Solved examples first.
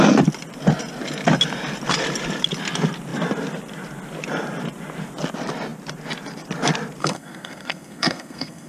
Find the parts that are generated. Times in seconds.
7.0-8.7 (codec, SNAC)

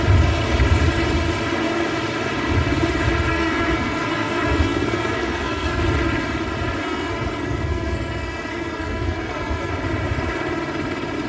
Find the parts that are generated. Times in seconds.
3.3-5.8 (codec, SNAC); 6.8-9.7

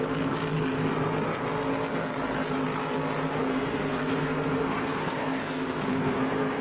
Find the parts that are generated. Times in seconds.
3.4-6.6 (codec, SNAC)

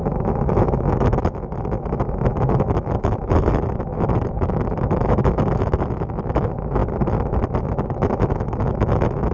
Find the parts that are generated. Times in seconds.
0.0-6.8 (autoencoder, DAC-VAE); 7.6-9.3

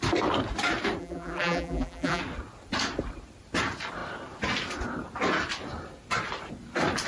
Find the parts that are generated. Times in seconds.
1.0-2.2 (vocoder, BigVGAN v2)

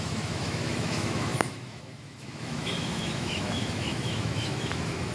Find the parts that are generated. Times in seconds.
0.0-5.1 (autoencoder, DAC-VAE)

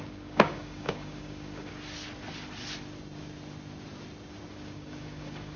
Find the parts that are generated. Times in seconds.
0.0-1.7 (codec, DAC); 4.5-5.6